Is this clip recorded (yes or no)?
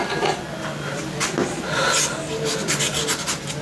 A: yes